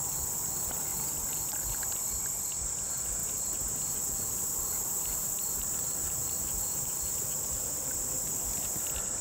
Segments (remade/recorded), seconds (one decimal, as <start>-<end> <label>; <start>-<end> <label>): 0.0-3.2 recorded; 3.2-7.7 remade; 7.7-9.2 recorded

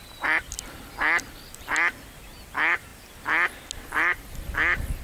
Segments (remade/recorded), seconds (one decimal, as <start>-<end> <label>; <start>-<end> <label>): 0.0-5.0 recorded

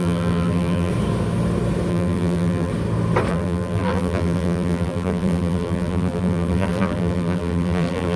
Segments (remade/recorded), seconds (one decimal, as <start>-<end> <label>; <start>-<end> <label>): 0.0-0.9 remade; 0.9-1.9 recorded; 1.9-2.7 remade; 2.7-3.3 recorded; 3.3-8.2 remade

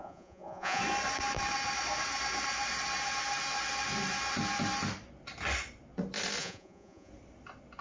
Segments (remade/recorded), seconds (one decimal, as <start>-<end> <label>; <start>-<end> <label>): 0.0-0.8 remade; 0.8-6.4 recorded; 6.4-7.1 remade; 7.1-7.8 recorded

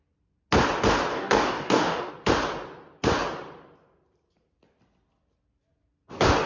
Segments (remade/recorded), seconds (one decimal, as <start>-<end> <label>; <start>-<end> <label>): 0.0-1.1 recorded; 1.1-2.1 remade; 2.1-6.5 recorded

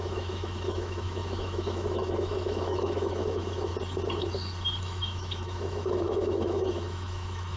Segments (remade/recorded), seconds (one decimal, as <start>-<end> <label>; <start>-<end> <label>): 0.0-3.7 remade; 3.7-4.8 recorded; 4.8-7.6 remade

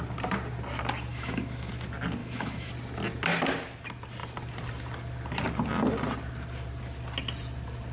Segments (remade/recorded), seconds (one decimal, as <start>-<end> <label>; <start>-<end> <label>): 0.0-1.1 recorded; 1.1-1.7 remade; 1.7-2.2 recorded; 2.2-2.7 remade; 2.7-7.9 recorded